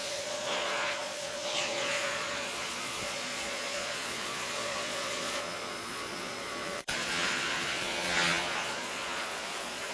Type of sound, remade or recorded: remade